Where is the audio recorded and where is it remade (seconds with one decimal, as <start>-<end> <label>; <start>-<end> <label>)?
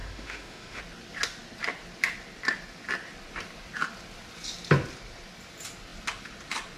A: 0.0-0.8 remade; 0.8-6.8 recorded